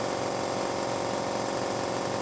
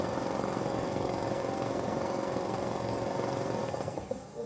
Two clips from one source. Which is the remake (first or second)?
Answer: second